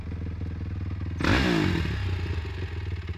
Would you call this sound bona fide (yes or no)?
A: yes